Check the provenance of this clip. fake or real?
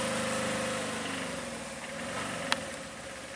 real